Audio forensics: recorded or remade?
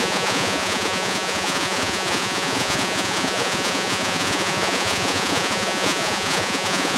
remade